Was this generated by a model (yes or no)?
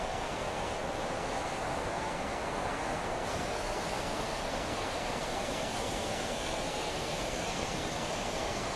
yes